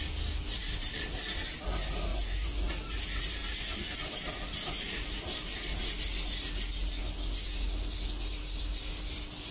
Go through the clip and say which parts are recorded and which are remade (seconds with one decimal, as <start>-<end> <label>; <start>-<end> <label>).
0.0-0.6 recorded; 0.6-1.7 remade; 1.7-2.1 recorded; 2.1-2.7 remade; 2.7-9.5 recorded